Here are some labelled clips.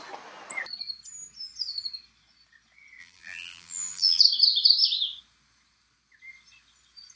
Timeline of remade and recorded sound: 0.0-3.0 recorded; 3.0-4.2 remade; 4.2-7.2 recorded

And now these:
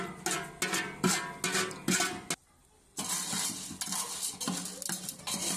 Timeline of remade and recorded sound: 0.0-5.6 recorded

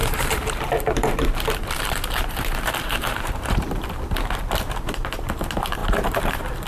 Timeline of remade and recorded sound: 0.0-4.0 remade; 4.0-6.7 recorded

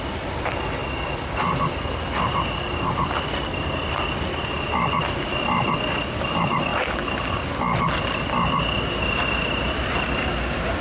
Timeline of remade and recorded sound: 0.0-0.8 remade; 0.8-5.9 recorded; 5.9-6.7 remade; 6.7-9.4 recorded; 9.4-10.8 remade

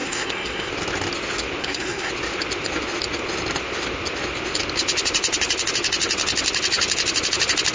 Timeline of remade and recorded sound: 0.0-0.7 remade; 0.7-1.6 recorded; 1.6-2.1 remade; 2.1-7.7 recorded

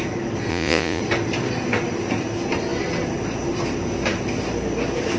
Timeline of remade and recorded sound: 0.0-0.5 recorded; 0.5-1.0 remade; 1.0-5.2 recorded